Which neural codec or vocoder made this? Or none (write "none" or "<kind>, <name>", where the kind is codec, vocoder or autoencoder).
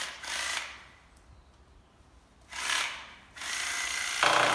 none